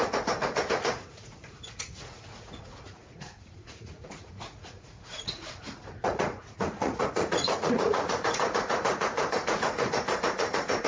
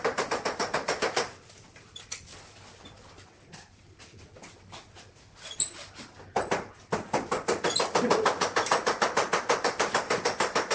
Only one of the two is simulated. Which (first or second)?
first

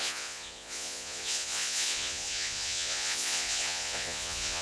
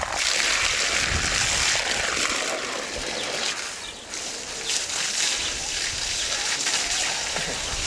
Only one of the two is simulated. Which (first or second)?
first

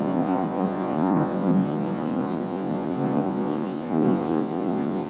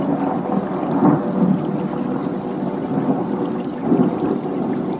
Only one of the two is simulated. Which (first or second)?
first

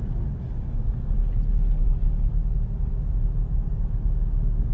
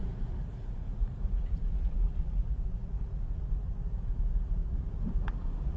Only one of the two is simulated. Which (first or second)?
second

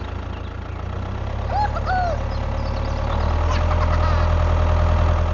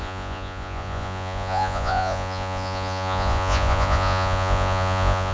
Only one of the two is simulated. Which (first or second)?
second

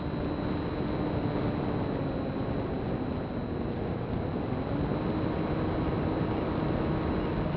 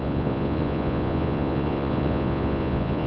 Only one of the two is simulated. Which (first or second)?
second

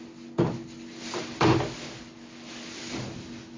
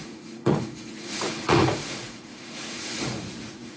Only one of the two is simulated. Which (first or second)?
second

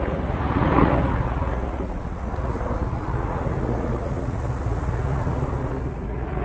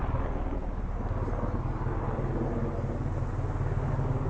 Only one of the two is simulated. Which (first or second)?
first